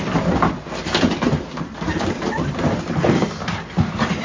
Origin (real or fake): real